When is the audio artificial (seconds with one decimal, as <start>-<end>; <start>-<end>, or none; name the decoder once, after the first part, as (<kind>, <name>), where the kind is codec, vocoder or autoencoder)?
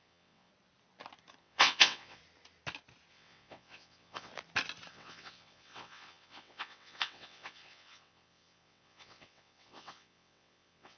0.0-0.5 (vocoder, WaveNeXt); 1.4-2.2; 3.1-4.3; 4.9-11.0